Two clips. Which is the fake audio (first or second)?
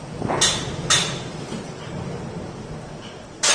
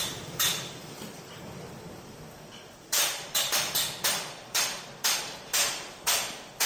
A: second